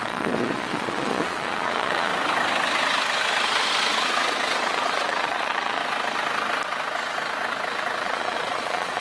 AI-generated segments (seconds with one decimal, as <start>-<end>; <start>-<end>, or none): 0.0-2.1; 3.9-5.8; 8.0-9.0

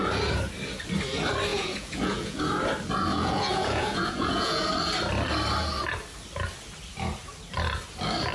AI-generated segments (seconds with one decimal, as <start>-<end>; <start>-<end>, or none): 1.5-2.4; 3.1-4.7

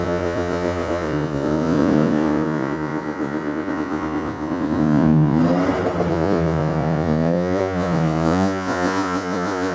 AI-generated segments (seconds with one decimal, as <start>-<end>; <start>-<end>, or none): 0.0-5.4; 6.1-9.7

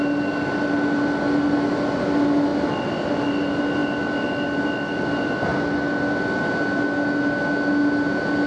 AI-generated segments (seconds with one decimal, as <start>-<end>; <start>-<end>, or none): none